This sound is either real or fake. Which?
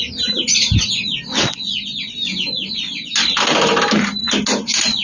real